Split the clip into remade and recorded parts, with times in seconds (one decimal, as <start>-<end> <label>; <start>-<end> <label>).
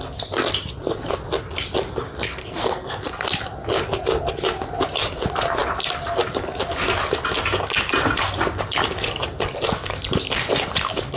0.0-2.4 recorded; 2.4-2.9 remade; 2.9-11.2 recorded